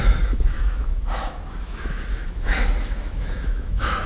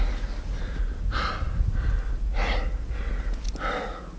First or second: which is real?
second